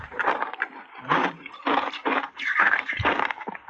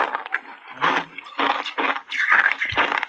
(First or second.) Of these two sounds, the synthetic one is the first